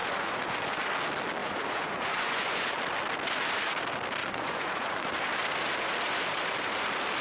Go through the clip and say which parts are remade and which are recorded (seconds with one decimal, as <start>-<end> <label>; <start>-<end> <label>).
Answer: 0.0-0.8 remade; 0.8-1.4 recorded; 1.4-2.8 remade; 2.8-4.2 recorded; 4.2-5.1 remade; 5.1-7.2 recorded